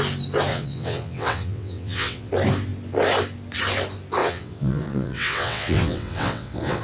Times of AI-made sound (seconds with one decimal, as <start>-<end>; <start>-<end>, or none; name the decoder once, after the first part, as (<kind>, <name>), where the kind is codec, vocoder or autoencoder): 0.5-2.3 (vocoder, WaveNeXt); 4.2-6.8